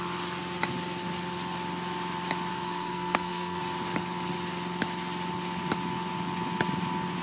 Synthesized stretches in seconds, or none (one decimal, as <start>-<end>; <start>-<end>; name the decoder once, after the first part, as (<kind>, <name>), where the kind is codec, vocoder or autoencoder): 2.5-3.6 (codec, SNAC)